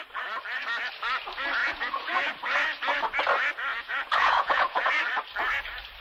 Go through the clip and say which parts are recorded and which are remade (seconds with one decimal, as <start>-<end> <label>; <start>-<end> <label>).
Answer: 0.0-1.6 recorded; 1.6-2.3 remade; 2.3-3.7 recorded; 3.7-4.9 remade; 4.9-6.0 recorded